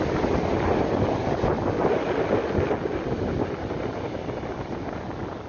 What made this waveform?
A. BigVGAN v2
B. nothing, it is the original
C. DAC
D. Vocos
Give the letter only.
B